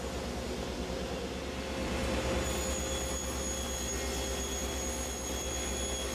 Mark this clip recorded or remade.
recorded